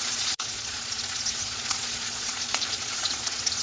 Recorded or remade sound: remade